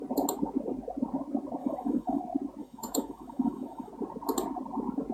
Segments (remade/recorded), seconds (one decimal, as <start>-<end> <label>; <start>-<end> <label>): 0.0-1.6 recorded; 1.6-2.2 remade; 2.2-2.6 recorded; 2.6-3.9 remade; 3.9-5.1 recorded